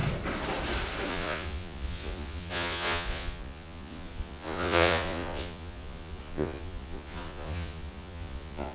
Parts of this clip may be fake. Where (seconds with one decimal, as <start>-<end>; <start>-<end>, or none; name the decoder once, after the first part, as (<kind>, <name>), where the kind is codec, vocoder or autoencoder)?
1.1-8.7 (vocoder, Vocos)